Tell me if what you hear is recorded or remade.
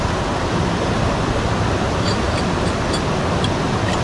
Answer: recorded